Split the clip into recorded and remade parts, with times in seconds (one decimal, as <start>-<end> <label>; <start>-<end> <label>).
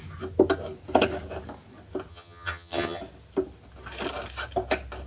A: 0.0-2.1 recorded; 2.1-3.0 remade; 3.0-5.1 recorded